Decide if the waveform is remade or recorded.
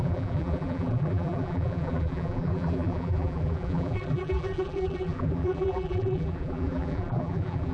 remade